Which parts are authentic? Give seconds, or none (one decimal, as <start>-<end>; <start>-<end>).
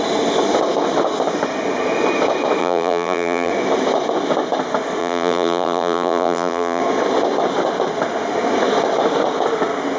0.0-2.6; 3.5-5.0; 6.8-10.0